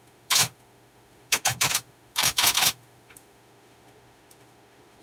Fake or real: fake